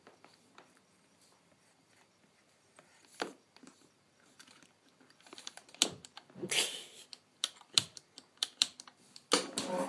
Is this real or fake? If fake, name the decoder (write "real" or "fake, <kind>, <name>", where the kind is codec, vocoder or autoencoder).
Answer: real